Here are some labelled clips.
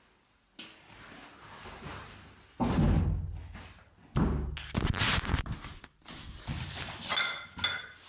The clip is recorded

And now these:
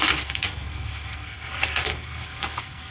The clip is remade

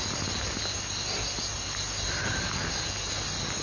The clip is recorded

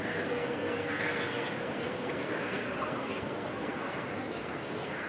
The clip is remade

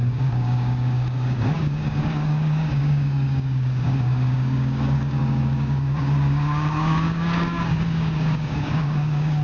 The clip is remade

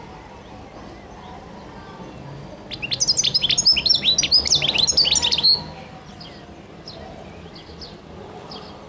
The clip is recorded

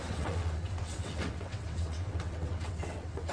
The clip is remade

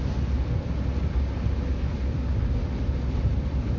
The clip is remade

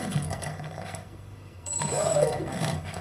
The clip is remade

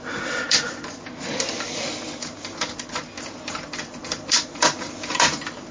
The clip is recorded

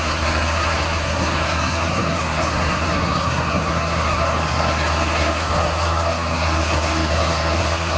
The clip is remade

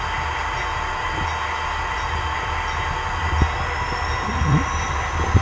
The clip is recorded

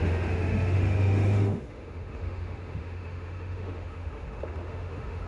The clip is remade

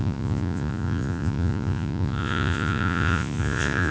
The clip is remade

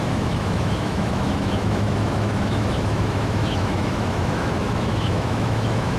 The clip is remade